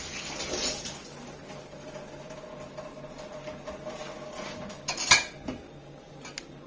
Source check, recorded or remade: recorded